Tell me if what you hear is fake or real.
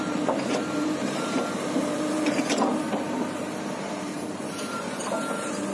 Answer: fake